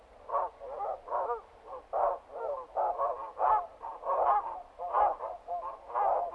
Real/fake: real